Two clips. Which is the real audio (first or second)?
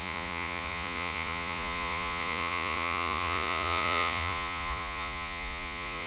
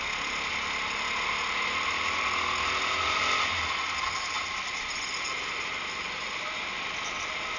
second